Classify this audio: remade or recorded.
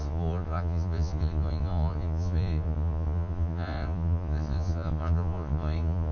remade